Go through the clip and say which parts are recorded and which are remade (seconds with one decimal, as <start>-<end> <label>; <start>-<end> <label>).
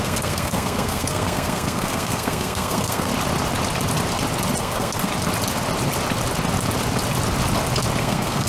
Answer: 0.0-3.1 remade; 3.1-4.6 recorded; 4.6-5.1 remade; 5.1-8.0 recorded; 8.0-8.5 remade